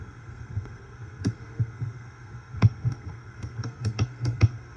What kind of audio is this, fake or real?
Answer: fake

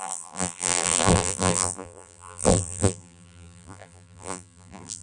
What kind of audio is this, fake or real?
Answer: fake